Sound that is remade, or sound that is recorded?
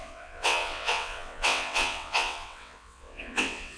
remade